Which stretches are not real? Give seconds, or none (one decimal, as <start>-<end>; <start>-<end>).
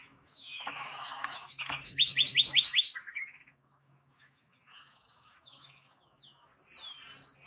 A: 0.0-6.5